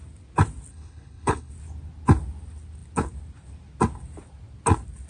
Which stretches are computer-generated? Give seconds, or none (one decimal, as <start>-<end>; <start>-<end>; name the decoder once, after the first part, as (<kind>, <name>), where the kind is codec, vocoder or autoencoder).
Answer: 0.7-1.5 (codec, HILCodec)